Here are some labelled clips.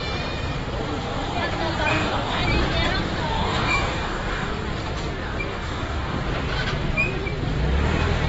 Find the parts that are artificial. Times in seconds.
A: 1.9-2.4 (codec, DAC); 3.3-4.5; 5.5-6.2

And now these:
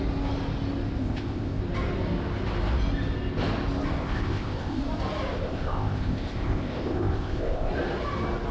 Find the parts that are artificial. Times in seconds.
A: 1.0-1.6 (codec, ZipCodec); 4.0-4.8; 5.3-7.7

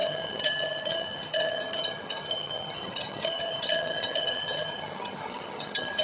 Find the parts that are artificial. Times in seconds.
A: 0.0-6.0 (vocoder, HiFi-GAN)

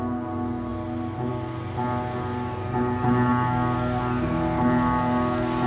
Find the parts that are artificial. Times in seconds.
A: none

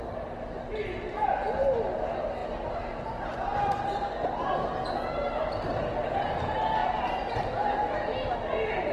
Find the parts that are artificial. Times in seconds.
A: none